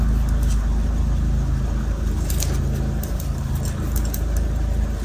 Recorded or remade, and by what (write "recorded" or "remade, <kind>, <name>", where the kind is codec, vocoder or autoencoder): recorded